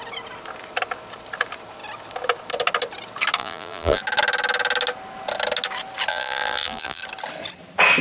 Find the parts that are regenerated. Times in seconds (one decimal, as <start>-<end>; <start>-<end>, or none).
3.4-4.0; 6.1-7.0